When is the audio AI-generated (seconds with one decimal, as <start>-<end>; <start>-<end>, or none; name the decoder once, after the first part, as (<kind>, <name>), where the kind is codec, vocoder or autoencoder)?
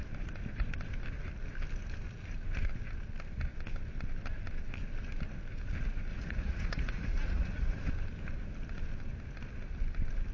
6.1-7.9 (vocoder, Vocos)